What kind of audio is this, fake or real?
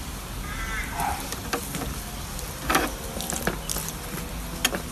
real